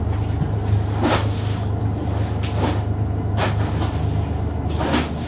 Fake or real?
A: real